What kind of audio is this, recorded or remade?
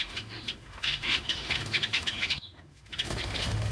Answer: remade